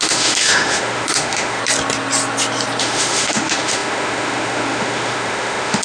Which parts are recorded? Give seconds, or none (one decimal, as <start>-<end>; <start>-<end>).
1.6-2.8